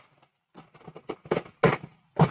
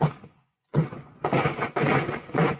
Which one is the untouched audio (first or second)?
first